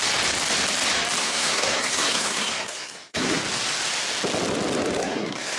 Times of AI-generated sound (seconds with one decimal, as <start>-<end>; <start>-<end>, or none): 1.2-3.4; 5.0-5.6